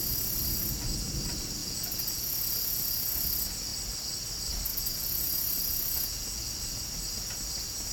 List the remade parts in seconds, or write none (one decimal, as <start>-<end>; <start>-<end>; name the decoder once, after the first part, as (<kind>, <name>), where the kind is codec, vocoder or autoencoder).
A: 1.6-3.1 (vocoder, Vocos); 4.7-6.5